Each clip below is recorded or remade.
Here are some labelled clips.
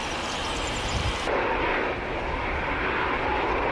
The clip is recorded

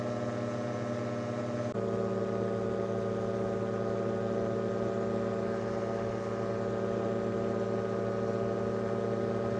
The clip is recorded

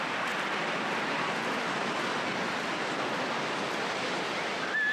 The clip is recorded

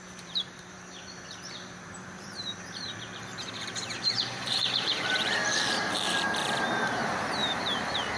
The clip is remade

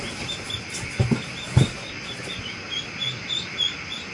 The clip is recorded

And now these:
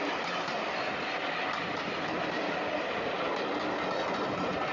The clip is recorded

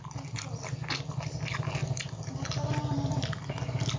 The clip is recorded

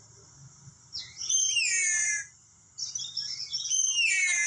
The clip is recorded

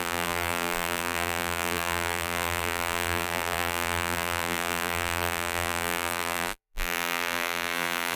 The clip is remade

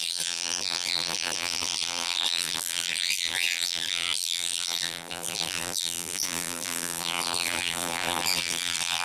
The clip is remade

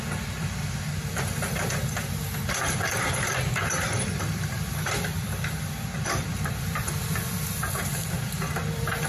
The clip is remade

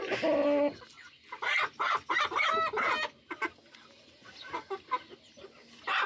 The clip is recorded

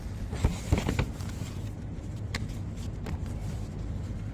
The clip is remade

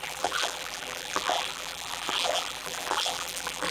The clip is remade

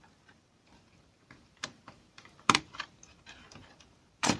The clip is remade